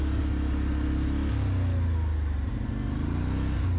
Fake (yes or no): no